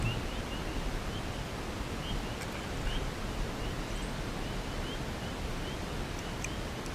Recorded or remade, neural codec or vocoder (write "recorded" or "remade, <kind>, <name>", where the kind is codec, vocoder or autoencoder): recorded